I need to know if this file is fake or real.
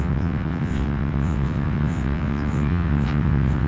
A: fake